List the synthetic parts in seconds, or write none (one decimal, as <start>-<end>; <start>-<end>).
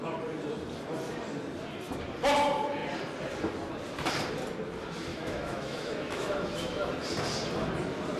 5.1-6.9